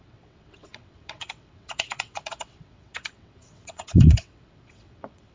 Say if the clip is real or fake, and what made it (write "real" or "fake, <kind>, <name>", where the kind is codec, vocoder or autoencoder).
fake, vocoder, WaveNeXt